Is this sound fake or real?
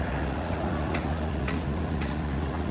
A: fake